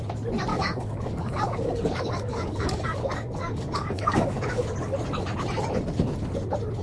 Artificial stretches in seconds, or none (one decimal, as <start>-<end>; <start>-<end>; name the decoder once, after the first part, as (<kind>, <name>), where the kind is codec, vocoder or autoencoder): 0.5-4.6 (codec, DAC)